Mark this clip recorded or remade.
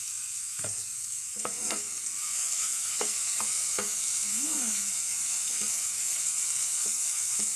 remade